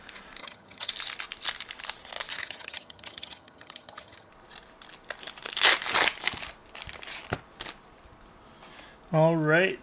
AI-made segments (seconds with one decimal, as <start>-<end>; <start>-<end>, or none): 0.4-0.9; 2.3-4.3

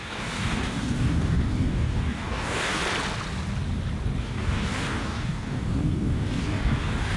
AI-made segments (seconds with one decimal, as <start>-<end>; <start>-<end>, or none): 0.0-2.8; 4.2-7.2

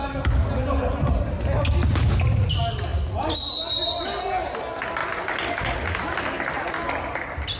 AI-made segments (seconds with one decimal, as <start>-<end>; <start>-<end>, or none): none

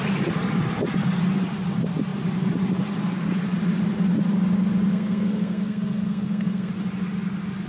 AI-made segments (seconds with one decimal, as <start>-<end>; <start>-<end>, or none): 4.9-6.7